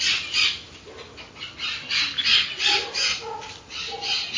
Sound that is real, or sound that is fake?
real